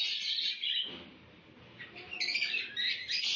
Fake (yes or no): no